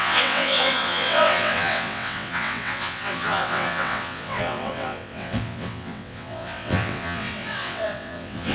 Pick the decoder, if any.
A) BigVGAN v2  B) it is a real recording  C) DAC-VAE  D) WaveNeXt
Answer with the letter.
D